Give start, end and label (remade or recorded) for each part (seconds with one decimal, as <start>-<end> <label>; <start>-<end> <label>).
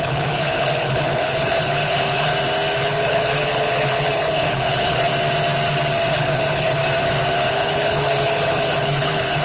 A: 0.0-2.3 remade; 2.3-2.8 recorded; 2.8-5.1 remade; 5.1-6.1 recorded; 6.1-6.8 remade; 6.8-7.5 recorded; 7.5-9.4 remade